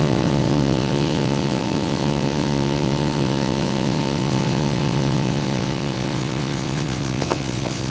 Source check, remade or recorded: remade